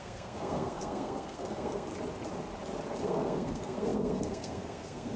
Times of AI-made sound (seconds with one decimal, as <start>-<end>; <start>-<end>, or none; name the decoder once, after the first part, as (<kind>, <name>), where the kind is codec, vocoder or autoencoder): 0.0-1.9 (codec, SNAC); 3.0-5.2